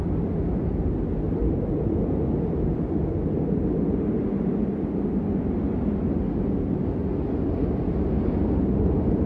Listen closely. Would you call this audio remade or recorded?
recorded